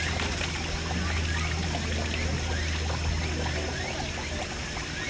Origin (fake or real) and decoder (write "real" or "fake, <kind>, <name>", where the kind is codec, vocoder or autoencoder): real